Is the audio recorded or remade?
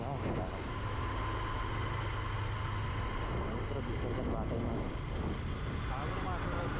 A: recorded